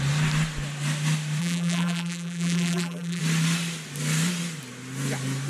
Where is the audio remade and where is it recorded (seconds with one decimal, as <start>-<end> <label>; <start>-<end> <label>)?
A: 0.0-1.4 recorded; 1.4-3.2 remade; 3.2-5.5 recorded